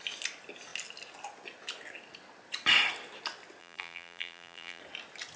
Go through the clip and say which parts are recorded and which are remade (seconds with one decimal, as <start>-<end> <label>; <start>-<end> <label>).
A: 0.0-3.6 recorded; 3.6-4.8 remade; 4.8-5.4 recorded